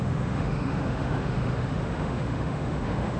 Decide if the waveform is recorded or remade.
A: remade